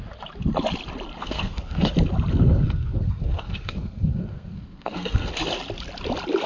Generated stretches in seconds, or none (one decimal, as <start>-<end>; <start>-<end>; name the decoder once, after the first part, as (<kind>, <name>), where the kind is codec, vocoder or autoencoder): 1.2-1.9 (codec, SNAC); 2.3-5.3